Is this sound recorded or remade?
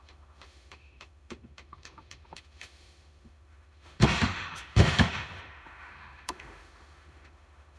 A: remade